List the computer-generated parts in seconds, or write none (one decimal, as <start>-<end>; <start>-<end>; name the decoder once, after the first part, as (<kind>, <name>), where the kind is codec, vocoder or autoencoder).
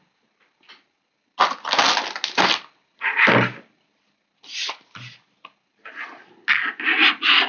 none